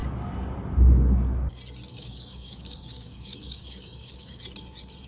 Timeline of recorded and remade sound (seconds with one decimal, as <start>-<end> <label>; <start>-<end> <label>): 0.0-1.9 recorded; 1.9-4.4 remade; 4.4-5.1 recorded